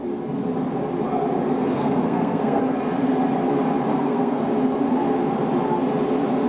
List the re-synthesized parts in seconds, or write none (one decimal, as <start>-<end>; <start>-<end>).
1.6-2.6; 3.9-4.4

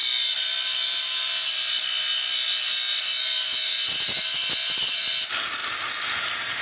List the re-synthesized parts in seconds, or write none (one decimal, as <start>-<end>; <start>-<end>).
none

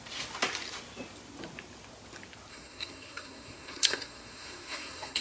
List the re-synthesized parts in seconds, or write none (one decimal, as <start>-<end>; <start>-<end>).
2.5-5.2

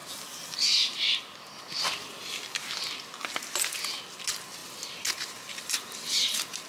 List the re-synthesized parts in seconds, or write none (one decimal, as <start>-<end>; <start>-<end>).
none

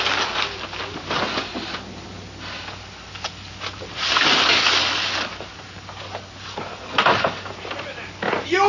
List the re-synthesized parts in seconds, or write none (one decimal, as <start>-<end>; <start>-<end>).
none

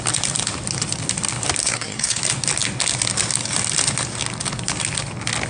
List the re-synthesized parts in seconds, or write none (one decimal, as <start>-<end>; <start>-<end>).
1.6-2.2

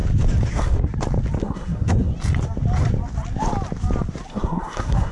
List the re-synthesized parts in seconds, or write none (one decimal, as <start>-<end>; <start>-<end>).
0.5-0.9; 1.4-2.1; 4.3-5.1